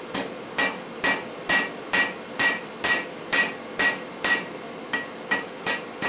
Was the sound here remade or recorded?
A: recorded